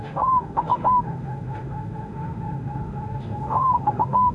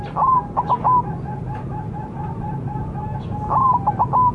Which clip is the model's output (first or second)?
first